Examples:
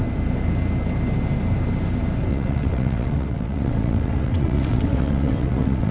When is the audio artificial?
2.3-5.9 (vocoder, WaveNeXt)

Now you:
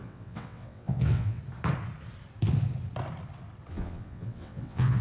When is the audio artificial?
0.0-1.4 (vocoder, WaveNeXt); 3.7-5.0

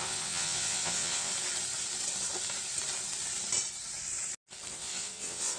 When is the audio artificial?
0.0-1.3 (vocoder, WaveNeXt); 4.7-5.6

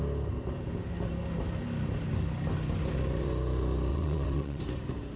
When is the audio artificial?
3.9-4.6 (vocoder, WaveNeXt)

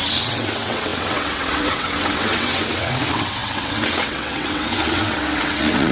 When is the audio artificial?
0.0-5.9 (vocoder, WaveNeXt)